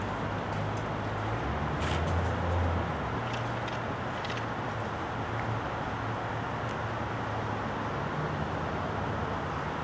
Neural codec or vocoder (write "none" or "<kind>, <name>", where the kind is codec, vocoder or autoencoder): none